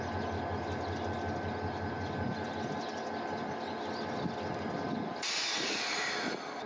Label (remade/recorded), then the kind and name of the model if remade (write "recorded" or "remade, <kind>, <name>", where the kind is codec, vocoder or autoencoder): recorded